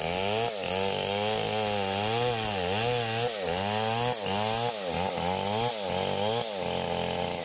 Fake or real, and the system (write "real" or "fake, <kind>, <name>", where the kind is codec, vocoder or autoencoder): real